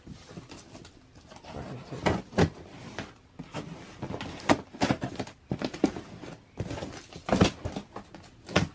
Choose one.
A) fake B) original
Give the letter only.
B